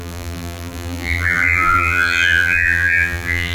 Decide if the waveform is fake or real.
fake